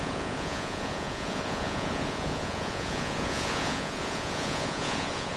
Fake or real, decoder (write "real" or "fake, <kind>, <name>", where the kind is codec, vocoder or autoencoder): fake, vocoder, Vocos